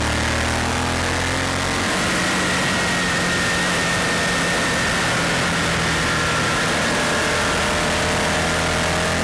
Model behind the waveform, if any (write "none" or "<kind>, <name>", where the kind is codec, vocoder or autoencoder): none